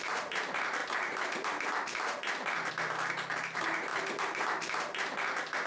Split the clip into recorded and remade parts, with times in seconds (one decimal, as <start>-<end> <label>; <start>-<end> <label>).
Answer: 0.0-5.7 remade